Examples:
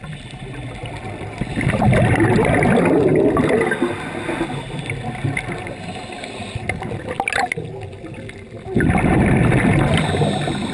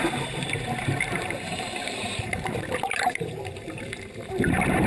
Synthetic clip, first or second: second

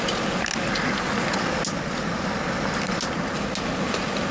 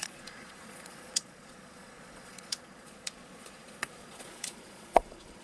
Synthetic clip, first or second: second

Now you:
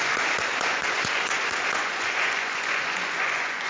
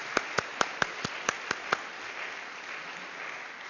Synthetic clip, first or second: first